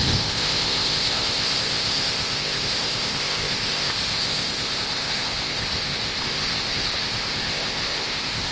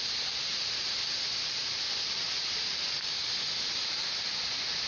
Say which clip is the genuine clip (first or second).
second